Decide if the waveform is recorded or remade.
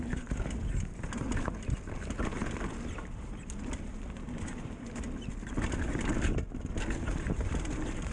recorded